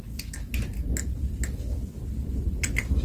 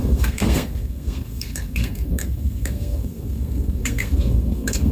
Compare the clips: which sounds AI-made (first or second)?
second